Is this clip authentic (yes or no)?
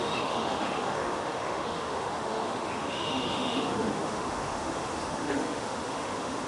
no